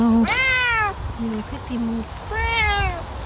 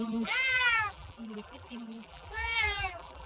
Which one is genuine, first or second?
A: first